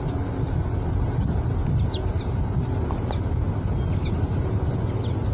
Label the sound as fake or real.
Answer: real